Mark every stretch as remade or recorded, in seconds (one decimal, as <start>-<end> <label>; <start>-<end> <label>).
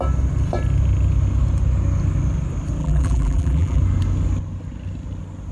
0.0-2.8 recorded; 2.8-3.8 remade; 3.8-5.5 recorded